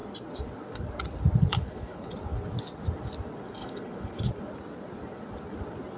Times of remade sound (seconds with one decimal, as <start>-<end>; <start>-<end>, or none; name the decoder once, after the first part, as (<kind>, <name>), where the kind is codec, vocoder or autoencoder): 1.5-2.1 (codec, HILCodec); 3.6-4.3